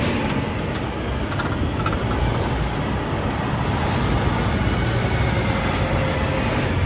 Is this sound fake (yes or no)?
no